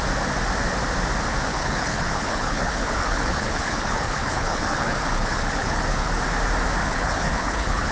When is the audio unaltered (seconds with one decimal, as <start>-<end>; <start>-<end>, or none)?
0.0-1.5; 6.2-6.8